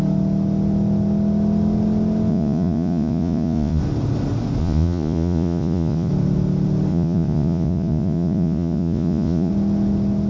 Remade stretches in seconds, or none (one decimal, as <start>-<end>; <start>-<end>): 2.3-3.8; 4.6-6.1; 6.9-9.5